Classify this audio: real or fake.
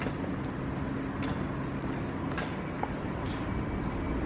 real